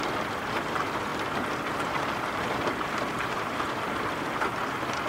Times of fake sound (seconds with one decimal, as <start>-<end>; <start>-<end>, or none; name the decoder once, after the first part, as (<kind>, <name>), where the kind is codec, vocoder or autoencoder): 1.1-4.2 (vocoder, BigVGAN v2)